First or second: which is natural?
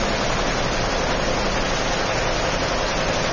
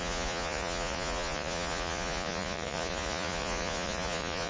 first